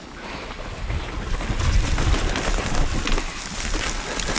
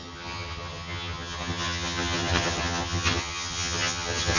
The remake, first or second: second